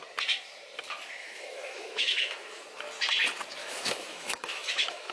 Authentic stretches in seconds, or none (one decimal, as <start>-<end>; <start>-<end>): 0.0-1.2; 2.6-3.6